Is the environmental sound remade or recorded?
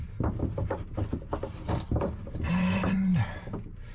recorded